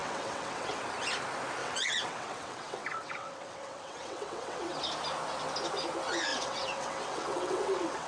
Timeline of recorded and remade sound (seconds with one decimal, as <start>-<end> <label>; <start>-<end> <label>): 0.0-0.8 remade; 0.8-1.6 recorded; 1.6-4.8 remade; 4.8-6.3 recorded; 6.3-8.1 remade

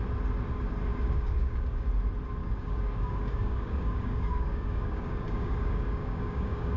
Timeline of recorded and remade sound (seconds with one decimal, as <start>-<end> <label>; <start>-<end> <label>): 0.0-0.9 recorded; 0.9-1.9 remade; 1.9-2.4 recorded; 2.4-6.8 remade

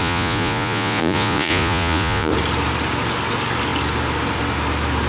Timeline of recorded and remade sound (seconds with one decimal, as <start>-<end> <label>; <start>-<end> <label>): 0.0-2.3 remade; 2.3-5.1 recorded

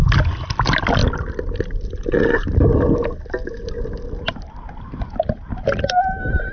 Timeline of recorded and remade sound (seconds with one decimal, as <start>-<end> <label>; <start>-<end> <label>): 0.0-6.5 recorded

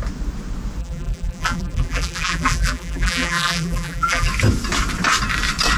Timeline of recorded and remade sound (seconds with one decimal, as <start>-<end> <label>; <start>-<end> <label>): 0.0-0.8 recorded; 0.8-4.3 remade; 4.3-5.8 recorded

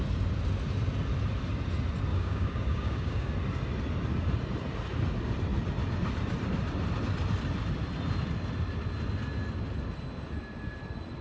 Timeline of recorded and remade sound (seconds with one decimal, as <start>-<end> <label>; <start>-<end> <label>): 0.0-2.1 recorded; 2.1-3.3 remade; 3.3-11.2 recorded

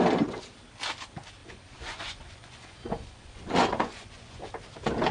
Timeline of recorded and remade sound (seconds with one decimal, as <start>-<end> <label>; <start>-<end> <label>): 0.0-1.4 recorded; 1.4-4.5 remade; 4.5-5.1 recorded